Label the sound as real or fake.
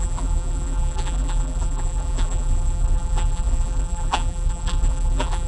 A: fake